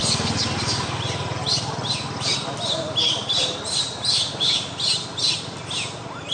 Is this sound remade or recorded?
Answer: recorded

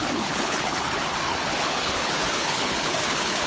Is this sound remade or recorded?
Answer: remade